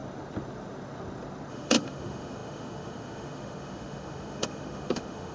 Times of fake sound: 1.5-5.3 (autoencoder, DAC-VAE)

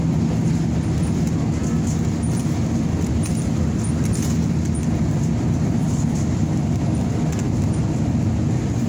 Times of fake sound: none

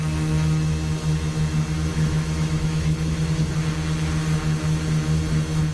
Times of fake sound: 1.9-3.5 (autoencoder, DAC-VAE)

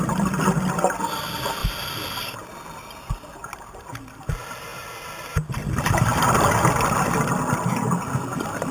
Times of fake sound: none

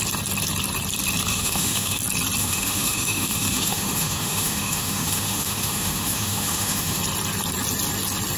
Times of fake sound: 1.3-2.0 (autoencoder, DAC-VAE); 2.4-7.0

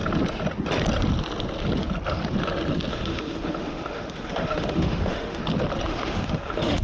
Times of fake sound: 2.9-5.4 (autoencoder, DAC-VAE); 5.9-6.8

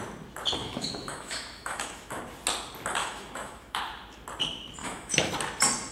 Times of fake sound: 0.6-2.2 (autoencoder, DAC-VAE); 3.0-3.8; 4.8-5.3